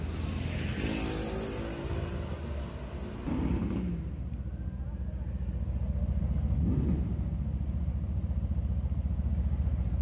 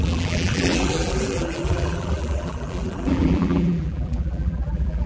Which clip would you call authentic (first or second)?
first